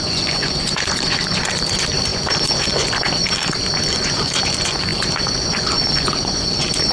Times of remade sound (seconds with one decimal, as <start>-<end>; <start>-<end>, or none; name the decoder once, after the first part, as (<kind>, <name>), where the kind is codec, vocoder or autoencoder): 0.0-3.2 (vocoder, Vocos); 3.9-6.9